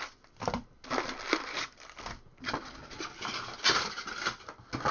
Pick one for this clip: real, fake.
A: real